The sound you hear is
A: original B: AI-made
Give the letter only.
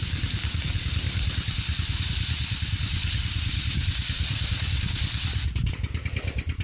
B